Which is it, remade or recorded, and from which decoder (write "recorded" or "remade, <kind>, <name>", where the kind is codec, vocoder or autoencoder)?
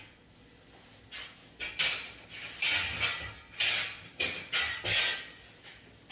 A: recorded